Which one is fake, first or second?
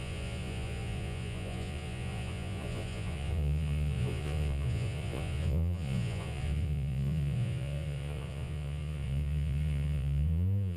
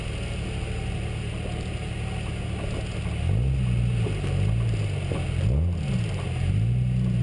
first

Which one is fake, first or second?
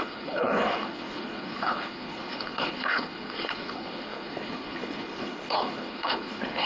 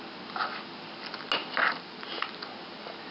first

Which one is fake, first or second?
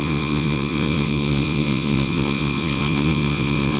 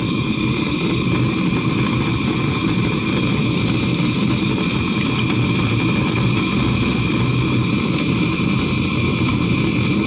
first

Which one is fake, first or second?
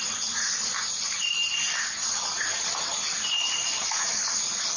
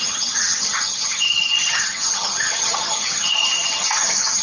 second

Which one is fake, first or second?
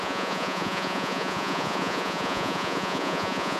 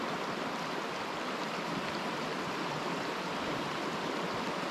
first